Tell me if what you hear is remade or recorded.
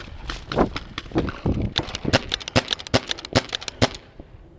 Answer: recorded